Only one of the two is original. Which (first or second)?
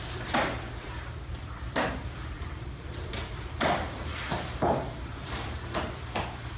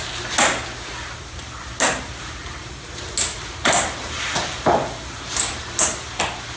second